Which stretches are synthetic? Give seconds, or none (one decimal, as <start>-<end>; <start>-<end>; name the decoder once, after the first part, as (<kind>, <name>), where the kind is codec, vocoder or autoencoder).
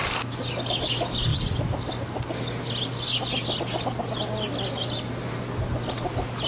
0.0-0.5 (codec, DAC)